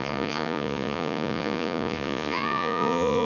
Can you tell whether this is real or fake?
fake